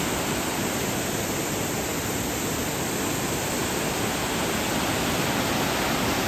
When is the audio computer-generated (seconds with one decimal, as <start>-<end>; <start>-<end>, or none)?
none